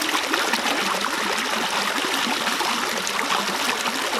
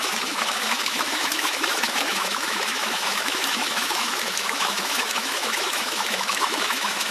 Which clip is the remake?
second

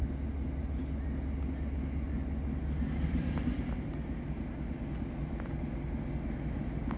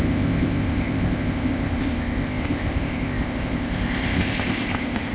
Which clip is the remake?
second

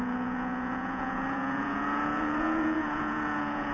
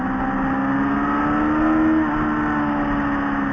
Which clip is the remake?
first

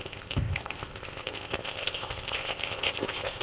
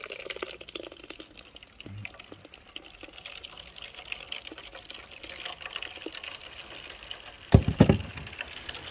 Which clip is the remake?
first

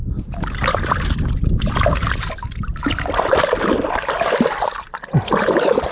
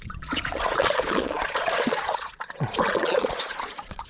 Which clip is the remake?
second